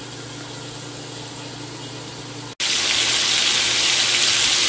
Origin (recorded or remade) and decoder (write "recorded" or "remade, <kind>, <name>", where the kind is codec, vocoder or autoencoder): recorded